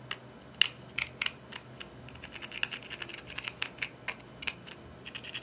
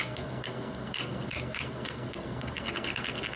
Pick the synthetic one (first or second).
second